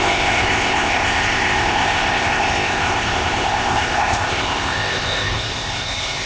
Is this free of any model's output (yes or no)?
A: no